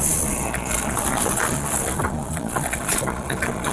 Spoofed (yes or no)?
yes